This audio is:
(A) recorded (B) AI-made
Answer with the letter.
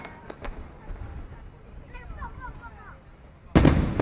A